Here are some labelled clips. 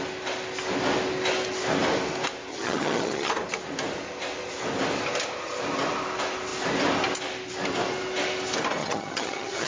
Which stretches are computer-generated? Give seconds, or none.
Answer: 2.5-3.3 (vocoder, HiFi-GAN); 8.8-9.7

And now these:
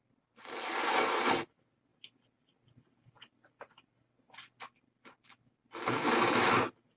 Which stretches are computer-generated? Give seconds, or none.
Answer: none

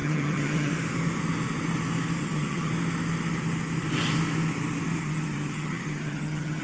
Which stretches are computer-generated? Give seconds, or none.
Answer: 0.0-0.7 (vocoder, HiFi-GAN); 2.2-2.7; 5.0-6.6

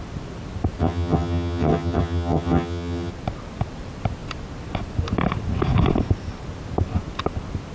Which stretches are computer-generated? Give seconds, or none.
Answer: 0.8-3.1 (vocoder, HiFi-GAN)

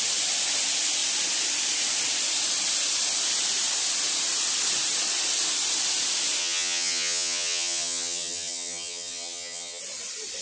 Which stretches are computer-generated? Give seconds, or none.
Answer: 6.4-9.8 (vocoder, HiFi-GAN)

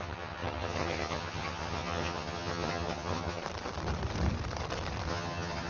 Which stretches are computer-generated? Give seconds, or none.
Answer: 0.0-3.4 (vocoder, HiFi-GAN); 5.1-5.7

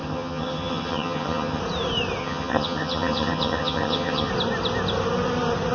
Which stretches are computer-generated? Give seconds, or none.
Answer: 0.0-1.6 (vocoder, HiFi-GAN); 2.2-4.3

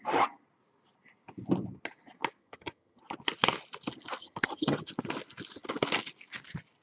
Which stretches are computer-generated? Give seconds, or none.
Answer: 2.4-3.0 (vocoder, HiFi-GAN); 4.2-4.9